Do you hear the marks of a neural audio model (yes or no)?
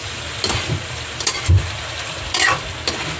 no